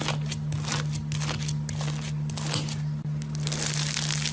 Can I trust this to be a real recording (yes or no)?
yes